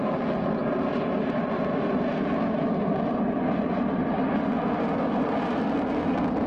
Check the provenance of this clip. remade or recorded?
recorded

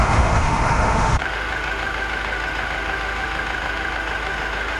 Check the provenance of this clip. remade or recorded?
remade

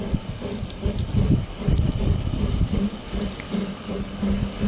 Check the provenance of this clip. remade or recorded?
recorded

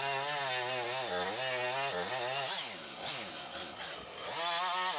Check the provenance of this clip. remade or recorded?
recorded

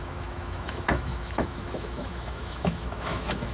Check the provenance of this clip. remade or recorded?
remade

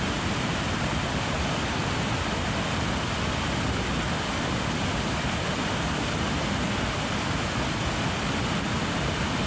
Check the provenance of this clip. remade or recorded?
recorded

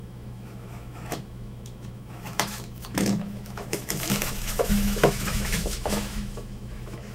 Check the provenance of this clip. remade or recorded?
remade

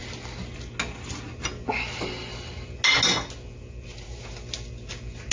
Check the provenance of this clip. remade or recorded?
recorded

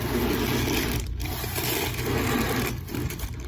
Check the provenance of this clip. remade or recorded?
recorded